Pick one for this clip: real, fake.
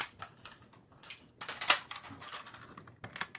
real